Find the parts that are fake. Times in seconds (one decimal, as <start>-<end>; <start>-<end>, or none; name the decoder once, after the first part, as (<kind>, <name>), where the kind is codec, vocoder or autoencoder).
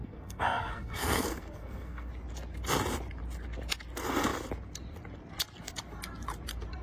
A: 0.0-2.1 (codec, SNAC)